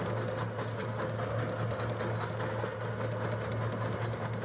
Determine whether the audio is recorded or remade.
recorded